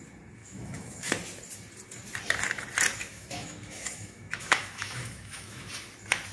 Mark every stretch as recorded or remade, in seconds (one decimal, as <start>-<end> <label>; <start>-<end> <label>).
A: 0.0-0.4 recorded; 0.4-1.1 remade; 1.1-3.0 recorded; 3.0-5.7 remade; 5.7-6.3 recorded